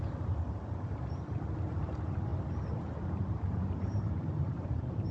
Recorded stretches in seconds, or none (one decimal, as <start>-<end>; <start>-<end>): none